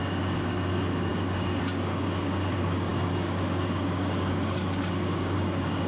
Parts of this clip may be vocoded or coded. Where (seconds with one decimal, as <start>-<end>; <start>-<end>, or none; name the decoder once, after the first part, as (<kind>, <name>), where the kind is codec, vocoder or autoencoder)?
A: 0.0-5.9 (codec, DAC)